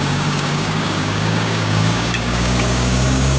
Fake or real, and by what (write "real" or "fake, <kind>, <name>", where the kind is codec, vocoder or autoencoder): fake, codec, DAC